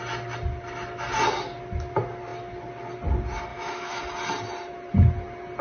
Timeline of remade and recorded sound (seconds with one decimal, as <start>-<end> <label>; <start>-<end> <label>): 0.0-3.5 recorded; 3.5-4.0 remade; 4.0-5.6 recorded